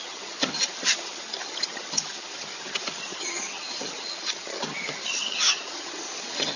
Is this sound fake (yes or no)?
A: yes